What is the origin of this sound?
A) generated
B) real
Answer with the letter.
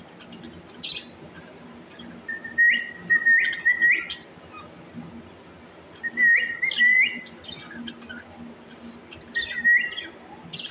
B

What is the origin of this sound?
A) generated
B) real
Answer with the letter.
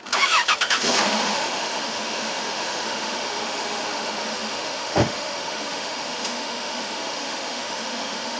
A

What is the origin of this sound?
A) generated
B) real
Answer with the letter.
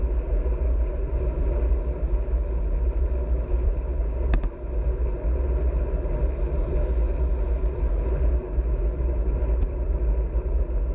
B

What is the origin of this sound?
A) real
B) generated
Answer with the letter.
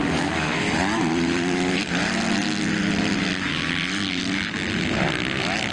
A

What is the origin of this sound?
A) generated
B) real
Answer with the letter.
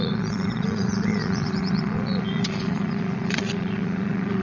A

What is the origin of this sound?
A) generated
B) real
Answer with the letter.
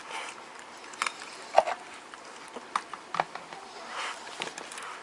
B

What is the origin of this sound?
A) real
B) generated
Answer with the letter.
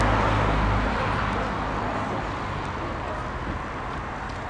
A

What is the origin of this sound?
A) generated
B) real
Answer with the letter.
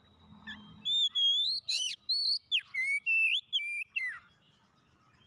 B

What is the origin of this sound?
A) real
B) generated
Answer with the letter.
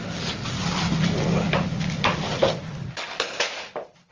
A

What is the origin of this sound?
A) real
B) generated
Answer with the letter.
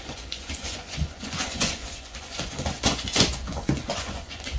B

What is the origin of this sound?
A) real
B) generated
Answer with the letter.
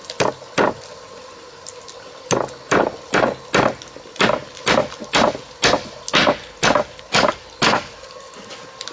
A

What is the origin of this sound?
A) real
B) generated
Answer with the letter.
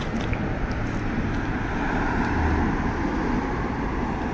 A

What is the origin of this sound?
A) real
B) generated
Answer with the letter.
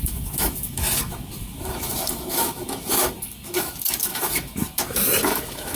B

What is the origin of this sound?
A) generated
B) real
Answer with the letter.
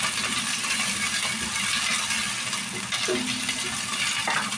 B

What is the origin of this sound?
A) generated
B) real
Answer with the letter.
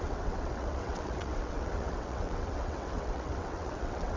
A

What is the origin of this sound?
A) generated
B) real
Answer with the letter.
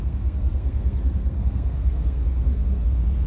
A